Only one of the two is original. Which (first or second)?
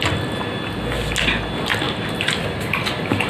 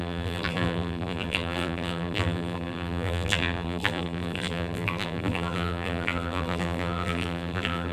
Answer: first